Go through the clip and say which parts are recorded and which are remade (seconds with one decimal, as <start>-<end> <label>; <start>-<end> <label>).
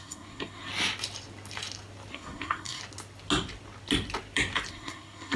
0.0-0.7 remade; 0.7-2.1 recorded; 2.1-2.8 remade; 2.8-4.7 recorded; 4.7-5.4 remade